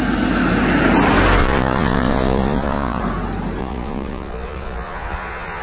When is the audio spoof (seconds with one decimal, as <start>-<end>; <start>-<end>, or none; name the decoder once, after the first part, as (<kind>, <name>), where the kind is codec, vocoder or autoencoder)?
1.4-3.0 (vocoder, Vocos); 3.6-5.6